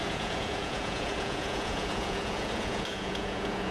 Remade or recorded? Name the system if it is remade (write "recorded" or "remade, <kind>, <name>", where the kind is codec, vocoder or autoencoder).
remade, vocoder, Vocos